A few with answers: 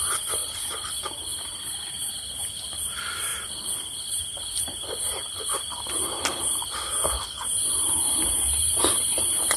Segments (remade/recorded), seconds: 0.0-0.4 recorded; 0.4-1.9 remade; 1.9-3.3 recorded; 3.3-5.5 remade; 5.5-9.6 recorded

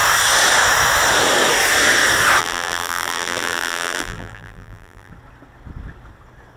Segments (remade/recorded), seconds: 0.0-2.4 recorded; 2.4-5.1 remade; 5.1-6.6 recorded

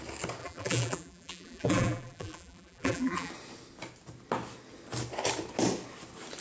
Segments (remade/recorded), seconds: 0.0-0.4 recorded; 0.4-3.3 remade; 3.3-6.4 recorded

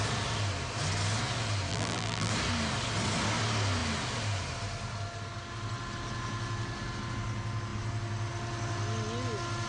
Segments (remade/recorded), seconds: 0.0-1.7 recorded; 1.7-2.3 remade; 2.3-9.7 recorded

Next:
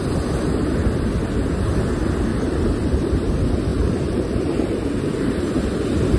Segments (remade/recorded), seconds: 0.0-2.3 recorded; 2.3-3.1 remade; 3.1-3.7 recorded; 3.7-5.5 remade; 5.5-6.2 recorded

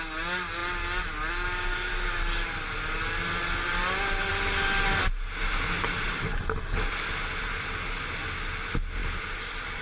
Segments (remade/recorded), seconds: 0.0-9.8 recorded

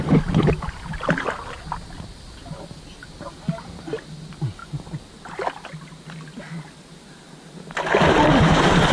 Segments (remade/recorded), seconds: 0.0-8.9 recorded

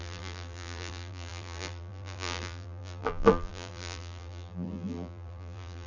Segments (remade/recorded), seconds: 0.0-5.9 remade